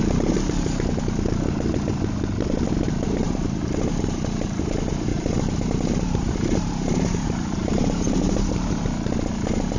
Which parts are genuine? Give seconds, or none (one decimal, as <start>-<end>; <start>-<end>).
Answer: 0.0-5.1; 8.8-9.8